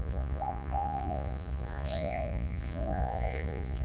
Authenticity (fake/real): fake